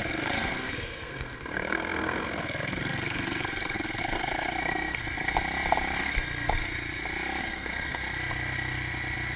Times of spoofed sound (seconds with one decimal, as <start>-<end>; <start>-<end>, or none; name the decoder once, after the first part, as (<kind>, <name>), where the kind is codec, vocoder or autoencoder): 0.0-5.0 (codec, SNAC); 6.0-6.6; 7.4-8.0